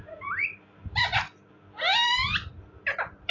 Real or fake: fake